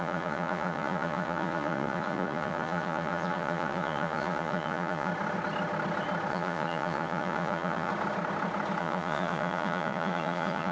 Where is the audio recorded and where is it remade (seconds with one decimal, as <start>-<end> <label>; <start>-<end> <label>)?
0.0-5.1 remade; 5.1-6.3 recorded; 6.3-7.9 remade; 7.9-8.8 recorded; 8.8-10.7 remade